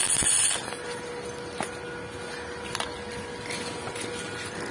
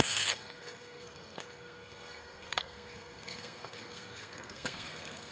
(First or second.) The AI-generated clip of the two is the second